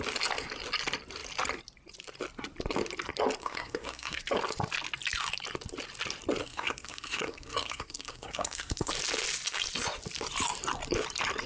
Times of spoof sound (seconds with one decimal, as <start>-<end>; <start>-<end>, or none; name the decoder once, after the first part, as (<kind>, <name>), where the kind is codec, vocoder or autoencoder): 3.4-4.2 (codec, SNAC); 6.4-8.9